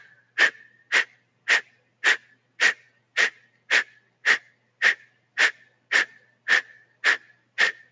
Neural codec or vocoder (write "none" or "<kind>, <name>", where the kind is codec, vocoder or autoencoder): none